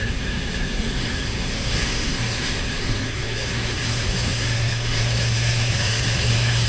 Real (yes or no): no